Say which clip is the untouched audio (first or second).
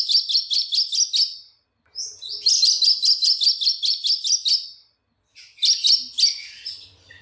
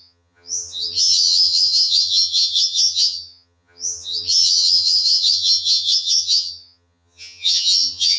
first